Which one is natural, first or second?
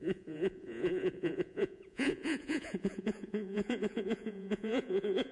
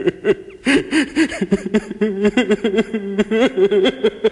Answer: second